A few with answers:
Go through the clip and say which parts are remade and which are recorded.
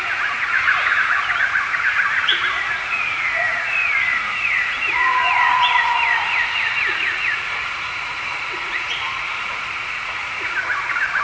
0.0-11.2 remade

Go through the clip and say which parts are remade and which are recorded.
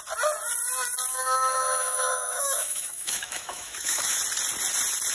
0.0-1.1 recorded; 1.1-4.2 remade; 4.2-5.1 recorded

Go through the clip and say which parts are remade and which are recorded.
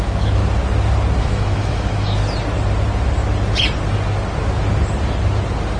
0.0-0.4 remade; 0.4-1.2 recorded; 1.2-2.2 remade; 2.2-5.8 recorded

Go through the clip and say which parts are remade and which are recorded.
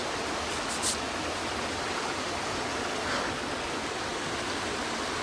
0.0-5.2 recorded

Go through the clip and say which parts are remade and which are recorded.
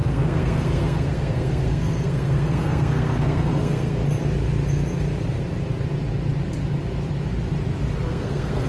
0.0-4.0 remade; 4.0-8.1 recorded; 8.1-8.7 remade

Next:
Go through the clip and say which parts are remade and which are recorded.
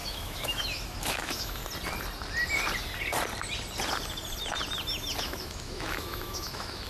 0.0-1.6 remade; 1.6-5.2 recorded; 5.2-6.9 remade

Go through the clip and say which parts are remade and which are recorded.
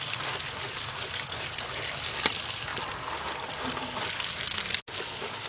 0.0-5.5 recorded